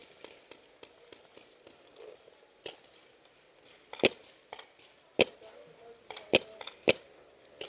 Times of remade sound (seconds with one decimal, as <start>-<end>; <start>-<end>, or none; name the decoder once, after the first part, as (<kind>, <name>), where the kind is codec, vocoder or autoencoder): none